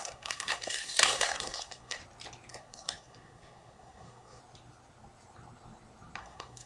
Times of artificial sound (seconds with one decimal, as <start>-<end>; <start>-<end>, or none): 0.0-2.0; 2.5-4.4; 6.2-6.7